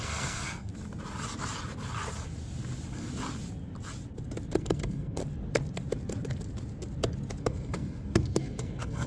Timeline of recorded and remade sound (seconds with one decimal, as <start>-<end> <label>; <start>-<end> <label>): 0.0-0.7 remade; 0.7-4.6 recorded; 4.6-5.2 remade; 5.2-7.4 recorded; 7.4-9.1 remade